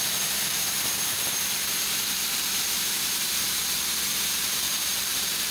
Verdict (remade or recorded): remade